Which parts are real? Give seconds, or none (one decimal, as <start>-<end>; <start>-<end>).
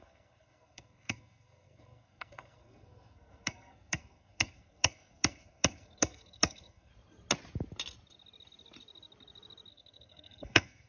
6.9-9.7